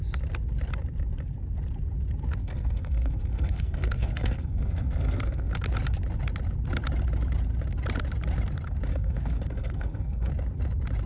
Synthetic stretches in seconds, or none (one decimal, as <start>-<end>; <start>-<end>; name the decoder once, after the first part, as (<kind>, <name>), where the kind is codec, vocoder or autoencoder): 2.4-5.5 (codec, SNAC); 8.9-10.3